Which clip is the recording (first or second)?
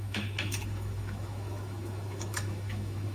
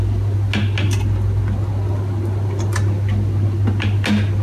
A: second